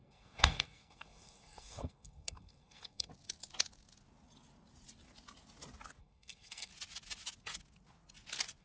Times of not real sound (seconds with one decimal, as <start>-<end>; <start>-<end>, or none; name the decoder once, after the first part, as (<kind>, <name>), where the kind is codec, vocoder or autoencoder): 0.0-3.1 (codec, SNAC); 6.0-6.7